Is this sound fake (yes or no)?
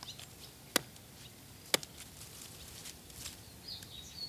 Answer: no